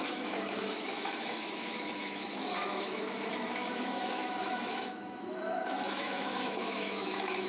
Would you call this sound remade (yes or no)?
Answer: yes